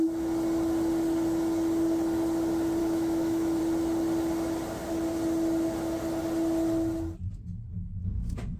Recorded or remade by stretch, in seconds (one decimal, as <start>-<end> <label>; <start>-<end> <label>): 0.0-2.8 recorded; 2.8-3.6 remade; 3.6-8.6 recorded